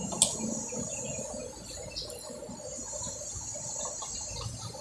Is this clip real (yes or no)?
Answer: yes